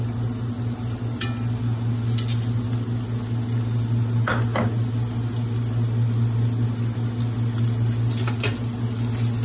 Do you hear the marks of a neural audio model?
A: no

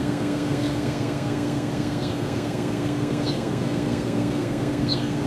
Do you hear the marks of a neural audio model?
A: yes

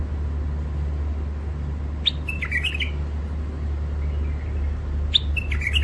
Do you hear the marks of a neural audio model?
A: no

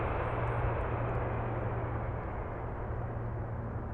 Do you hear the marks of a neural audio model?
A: no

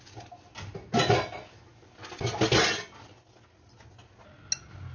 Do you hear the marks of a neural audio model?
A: no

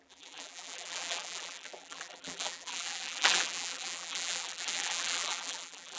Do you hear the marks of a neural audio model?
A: yes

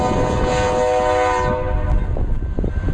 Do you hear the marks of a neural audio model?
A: no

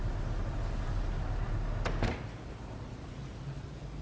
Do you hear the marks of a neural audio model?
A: no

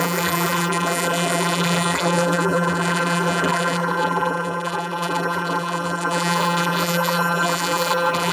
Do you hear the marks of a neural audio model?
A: yes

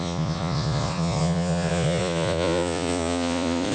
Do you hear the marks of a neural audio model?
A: yes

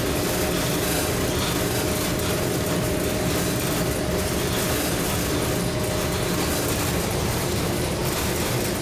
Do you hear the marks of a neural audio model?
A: no